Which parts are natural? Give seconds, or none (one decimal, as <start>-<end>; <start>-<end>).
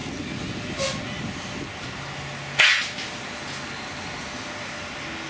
0.0-5.3